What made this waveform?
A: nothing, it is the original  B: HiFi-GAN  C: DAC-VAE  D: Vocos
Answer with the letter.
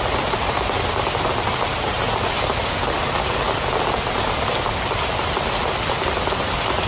A